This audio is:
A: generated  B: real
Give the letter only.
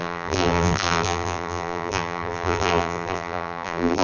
A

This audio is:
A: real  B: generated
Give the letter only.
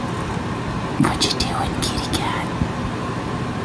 A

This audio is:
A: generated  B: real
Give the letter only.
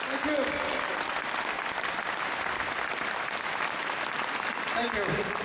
B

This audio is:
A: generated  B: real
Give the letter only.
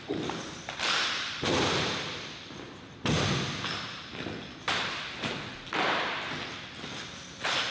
B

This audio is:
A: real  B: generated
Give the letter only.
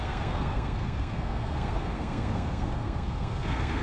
B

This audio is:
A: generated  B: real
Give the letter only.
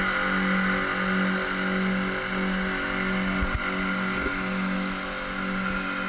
B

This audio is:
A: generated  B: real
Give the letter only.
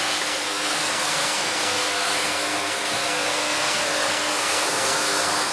A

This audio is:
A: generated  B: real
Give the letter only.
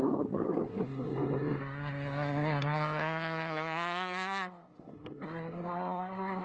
A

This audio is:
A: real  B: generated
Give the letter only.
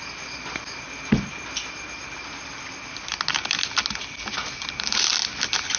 A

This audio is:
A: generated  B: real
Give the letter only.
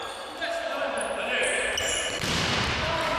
B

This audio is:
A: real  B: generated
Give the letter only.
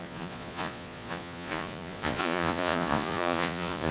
B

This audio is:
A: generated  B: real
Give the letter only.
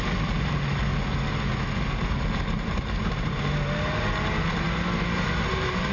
A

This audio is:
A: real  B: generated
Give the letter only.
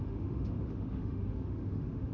B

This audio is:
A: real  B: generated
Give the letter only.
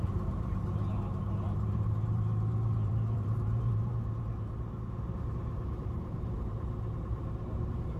B